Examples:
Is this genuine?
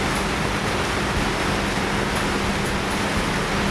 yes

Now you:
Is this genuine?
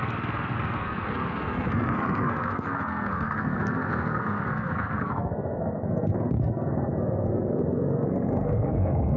no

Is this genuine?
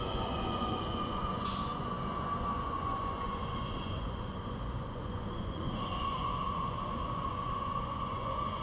no